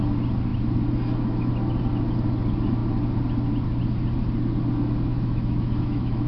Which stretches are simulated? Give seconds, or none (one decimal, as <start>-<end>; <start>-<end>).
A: 5.1-6.3